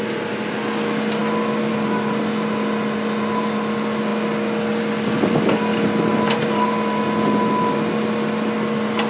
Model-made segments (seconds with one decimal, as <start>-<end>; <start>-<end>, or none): none